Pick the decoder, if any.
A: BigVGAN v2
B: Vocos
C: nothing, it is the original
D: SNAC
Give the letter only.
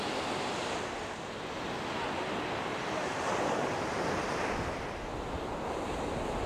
C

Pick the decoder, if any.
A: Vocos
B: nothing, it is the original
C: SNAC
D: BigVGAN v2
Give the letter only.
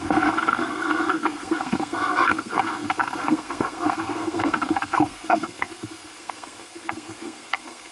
C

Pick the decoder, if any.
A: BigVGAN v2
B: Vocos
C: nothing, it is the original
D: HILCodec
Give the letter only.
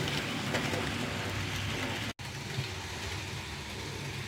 C